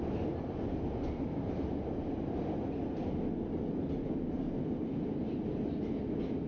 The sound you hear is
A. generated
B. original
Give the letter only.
B